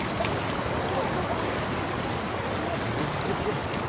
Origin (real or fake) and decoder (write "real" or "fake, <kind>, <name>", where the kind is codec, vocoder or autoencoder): real